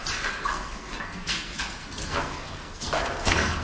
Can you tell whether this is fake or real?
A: fake